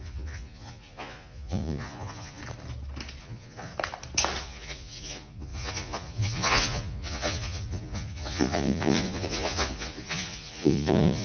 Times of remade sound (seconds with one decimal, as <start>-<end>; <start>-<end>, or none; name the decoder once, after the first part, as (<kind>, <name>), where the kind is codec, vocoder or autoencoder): 0.0-2.4 (vocoder, Vocos); 3.2-3.7; 4.4-11.2